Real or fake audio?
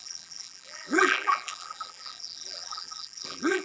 fake